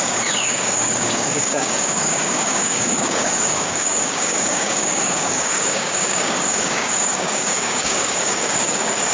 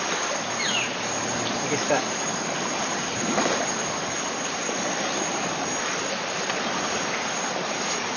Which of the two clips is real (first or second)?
second